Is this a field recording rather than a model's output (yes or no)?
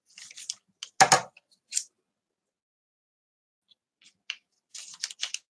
yes